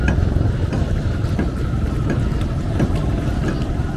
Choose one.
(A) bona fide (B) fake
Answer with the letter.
A